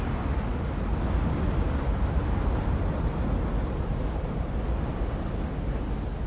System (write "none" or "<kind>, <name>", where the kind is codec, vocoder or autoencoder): none